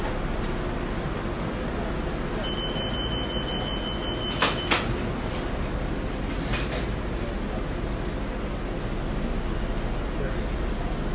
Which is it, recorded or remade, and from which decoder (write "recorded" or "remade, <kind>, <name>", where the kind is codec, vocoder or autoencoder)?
recorded